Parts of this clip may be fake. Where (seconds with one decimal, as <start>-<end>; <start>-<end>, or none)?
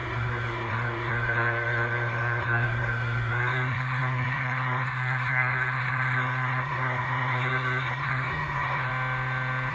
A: 0.0-8.9